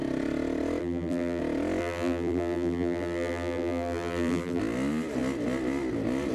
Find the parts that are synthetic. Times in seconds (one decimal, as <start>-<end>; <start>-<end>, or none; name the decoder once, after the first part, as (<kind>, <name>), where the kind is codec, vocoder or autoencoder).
0.8-1.4 (vocoder, BigVGAN v2); 1.8-4.6